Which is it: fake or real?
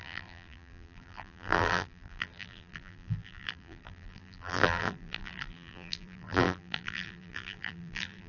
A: fake